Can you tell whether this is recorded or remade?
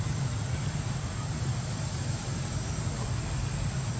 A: recorded